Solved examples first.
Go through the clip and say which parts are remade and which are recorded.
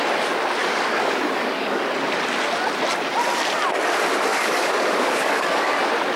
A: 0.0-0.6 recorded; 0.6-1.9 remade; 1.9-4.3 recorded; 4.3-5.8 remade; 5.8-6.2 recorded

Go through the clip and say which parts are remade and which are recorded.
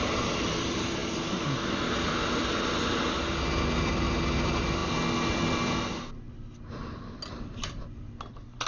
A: 0.0-8.7 recorded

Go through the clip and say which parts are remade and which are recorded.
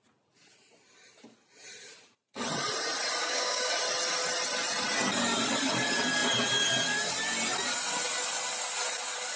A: 0.0-3.2 recorded; 3.2-3.7 remade; 3.7-9.4 recorded